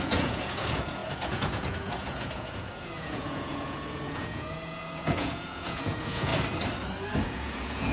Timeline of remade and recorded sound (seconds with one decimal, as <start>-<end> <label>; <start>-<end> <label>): 0.0-6.3 remade; 6.3-7.2 recorded; 7.2-7.9 remade